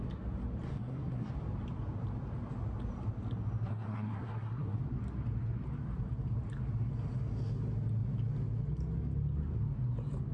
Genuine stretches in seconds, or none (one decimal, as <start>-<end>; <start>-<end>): 0.0-0.7; 1.3-3.7; 4.8-10.3